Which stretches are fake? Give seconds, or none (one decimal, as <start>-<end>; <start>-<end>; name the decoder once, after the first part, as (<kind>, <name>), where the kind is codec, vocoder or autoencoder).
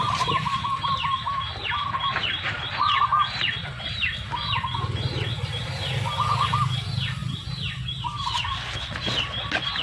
none